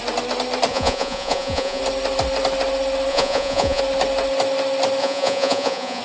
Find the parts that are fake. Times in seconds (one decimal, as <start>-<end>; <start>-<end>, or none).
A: 0.7-1.8; 3.1-3.8; 5.0-6.0